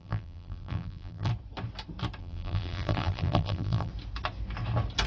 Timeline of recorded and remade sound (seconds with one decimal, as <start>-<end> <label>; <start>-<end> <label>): 0.0-1.3 remade; 1.3-2.2 recorded; 2.2-3.9 remade; 3.9-5.1 recorded